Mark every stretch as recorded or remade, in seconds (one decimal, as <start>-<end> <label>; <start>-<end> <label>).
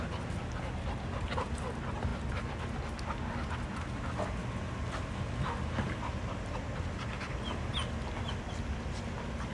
0.0-9.5 recorded